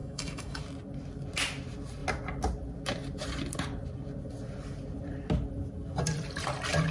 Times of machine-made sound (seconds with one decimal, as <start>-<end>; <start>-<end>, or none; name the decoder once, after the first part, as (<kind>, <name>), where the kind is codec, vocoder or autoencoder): 0.0-0.6 (autoencoder, DAC-VAE)